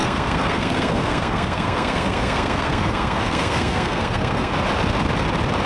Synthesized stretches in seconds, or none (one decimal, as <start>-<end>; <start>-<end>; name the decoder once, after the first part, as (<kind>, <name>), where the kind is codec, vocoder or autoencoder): 0.0-4.5 (codec, SNAC)

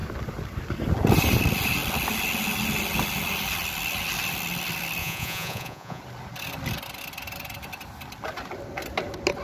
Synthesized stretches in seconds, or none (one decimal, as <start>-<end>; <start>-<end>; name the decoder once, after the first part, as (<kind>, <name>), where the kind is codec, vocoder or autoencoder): 5.0-6.0 (vocoder, Vocos)

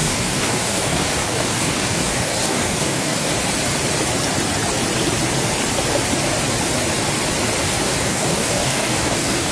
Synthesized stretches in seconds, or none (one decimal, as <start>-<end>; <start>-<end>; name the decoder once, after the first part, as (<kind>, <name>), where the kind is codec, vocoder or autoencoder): 0.0-3.3 (codec, DAC); 7.6-9.5

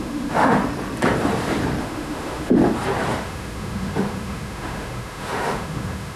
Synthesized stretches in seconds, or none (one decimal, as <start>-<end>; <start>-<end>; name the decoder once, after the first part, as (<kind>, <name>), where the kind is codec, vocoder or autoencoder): 0.0-0.6 (autoencoder, DAC-VAE); 1.8-2.6; 3.2-6.2

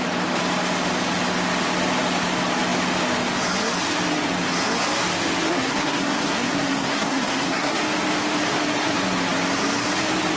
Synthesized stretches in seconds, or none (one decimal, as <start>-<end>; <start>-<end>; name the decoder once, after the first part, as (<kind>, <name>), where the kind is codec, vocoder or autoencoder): 5.5-7.8 (codec, SNAC)

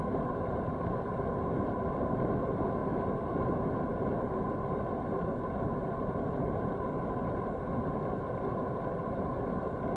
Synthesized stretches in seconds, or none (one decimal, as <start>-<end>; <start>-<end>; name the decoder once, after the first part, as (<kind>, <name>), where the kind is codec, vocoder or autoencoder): none

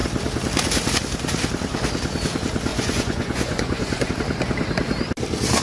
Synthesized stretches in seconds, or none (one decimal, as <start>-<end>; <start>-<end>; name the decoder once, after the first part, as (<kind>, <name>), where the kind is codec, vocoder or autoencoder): 2.7-4.1 (vocoder, Vocos)

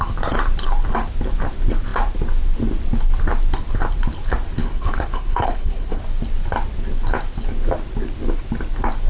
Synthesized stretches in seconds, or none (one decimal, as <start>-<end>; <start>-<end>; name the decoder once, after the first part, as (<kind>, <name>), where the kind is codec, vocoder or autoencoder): 4.6-6.0 (codec, HILCodec)